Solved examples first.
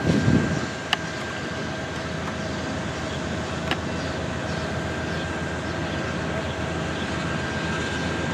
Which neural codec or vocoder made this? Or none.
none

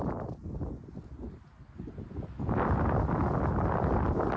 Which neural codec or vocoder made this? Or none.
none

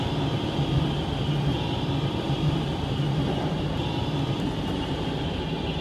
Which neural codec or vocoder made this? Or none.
vocoder, BigVGAN v2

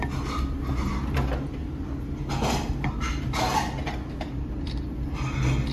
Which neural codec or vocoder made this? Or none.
none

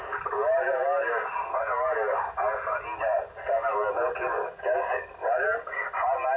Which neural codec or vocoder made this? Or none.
none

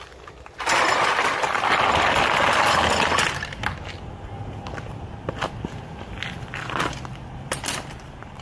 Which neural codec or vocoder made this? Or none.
vocoder, BigVGAN v2